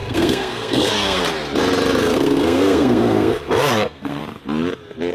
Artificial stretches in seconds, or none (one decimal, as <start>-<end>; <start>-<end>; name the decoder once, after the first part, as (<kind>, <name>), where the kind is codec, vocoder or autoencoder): 0.0-1.2 (codec, SNAC); 2.0-4.2